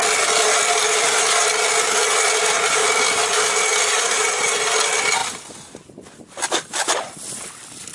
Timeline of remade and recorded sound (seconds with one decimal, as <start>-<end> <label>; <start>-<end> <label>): 0.0-3.7 recorded; 3.7-4.4 remade; 4.4-7.9 recorded